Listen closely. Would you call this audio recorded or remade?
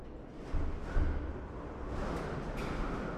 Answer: recorded